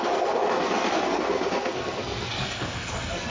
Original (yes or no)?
no